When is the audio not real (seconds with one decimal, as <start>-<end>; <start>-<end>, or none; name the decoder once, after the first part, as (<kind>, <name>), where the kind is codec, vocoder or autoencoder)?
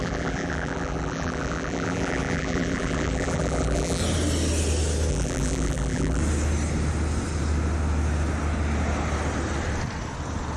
0.0-4.0 (vocoder, BigVGAN v2); 5.1-6.2